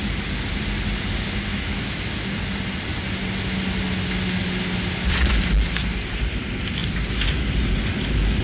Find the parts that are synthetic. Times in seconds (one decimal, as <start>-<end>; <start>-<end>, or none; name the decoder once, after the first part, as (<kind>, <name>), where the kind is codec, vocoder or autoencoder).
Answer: 1.5-2.2 (autoencoder, DAC-VAE)